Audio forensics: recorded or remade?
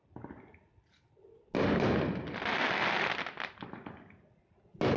recorded